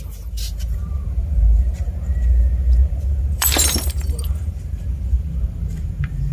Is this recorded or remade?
remade